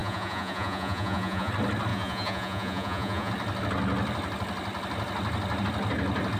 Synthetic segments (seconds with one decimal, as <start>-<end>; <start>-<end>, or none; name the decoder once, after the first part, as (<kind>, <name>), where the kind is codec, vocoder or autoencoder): 0.0-1.5 (vocoder, Vocos); 1.9-3.3